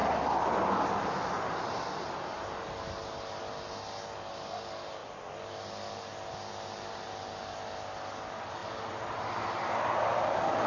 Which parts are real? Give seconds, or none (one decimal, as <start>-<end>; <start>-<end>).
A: 0.0-10.7